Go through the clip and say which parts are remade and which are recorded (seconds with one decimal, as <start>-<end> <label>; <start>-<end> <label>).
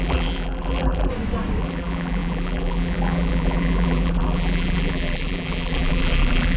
0.0-1.1 remade; 1.1-1.6 recorded; 1.6-6.6 remade